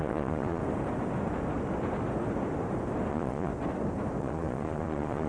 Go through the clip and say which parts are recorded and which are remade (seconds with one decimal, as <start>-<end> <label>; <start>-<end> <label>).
0.0-0.6 remade; 0.6-3.1 recorded; 3.1-3.5 remade; 3.5-4.2 recorded; 4.2-5.3 remade